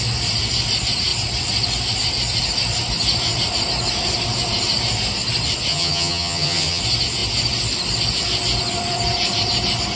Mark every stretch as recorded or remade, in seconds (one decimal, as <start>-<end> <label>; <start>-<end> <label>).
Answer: 0.0-5.7 recorded; 5.7-6.8 remade; 6.8-10.0 recorded